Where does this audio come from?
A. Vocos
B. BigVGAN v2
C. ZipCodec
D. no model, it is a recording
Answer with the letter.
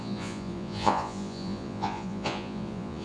A